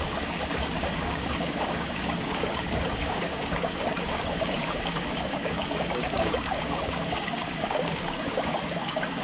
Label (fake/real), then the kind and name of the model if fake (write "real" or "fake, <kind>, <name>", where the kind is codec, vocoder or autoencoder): fake, codec, DAC